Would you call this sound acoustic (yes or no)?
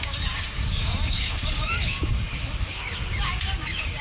no